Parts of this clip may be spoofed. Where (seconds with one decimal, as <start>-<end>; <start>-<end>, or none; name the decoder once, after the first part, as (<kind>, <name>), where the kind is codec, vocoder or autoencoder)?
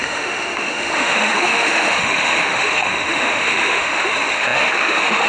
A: 0.0-5.3 (autoencoder, DAC-VAE)